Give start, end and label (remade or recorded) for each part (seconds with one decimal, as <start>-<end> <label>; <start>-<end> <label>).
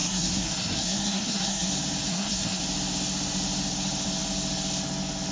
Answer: 0.0-1.7 remade; 1.7-2.1 recorded; 2.1-2.6 remade; 2.6-5.3 recorded